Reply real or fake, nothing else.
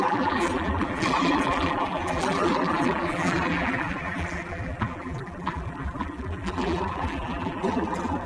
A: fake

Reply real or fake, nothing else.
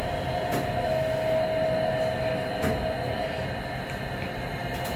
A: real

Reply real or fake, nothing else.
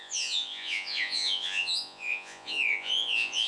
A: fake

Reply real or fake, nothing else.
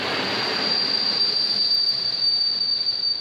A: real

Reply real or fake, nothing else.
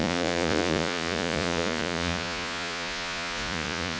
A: fake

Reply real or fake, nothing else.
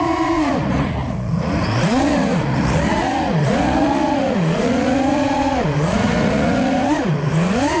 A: fake